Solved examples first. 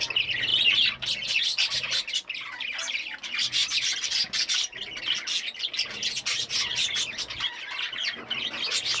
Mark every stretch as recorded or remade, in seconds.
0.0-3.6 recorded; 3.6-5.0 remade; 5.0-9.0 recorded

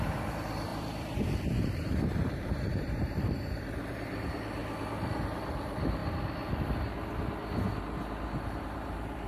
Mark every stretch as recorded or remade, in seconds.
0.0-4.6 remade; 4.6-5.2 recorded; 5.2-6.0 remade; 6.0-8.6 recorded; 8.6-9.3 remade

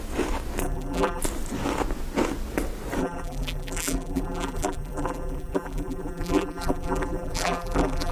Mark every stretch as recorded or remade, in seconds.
0.0-0.6 recorded; 0.6-1.2 remade; 1.2-3.0 recorded; 3.0-8.1 remade